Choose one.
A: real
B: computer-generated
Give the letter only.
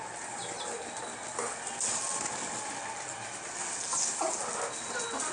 A